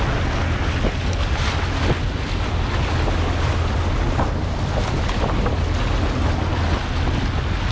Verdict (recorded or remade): recorded